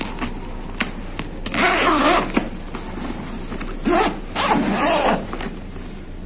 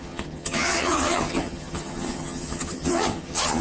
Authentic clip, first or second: first